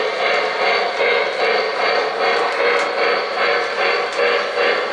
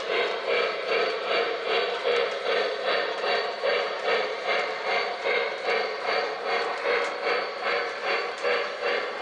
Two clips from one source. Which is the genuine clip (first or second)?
first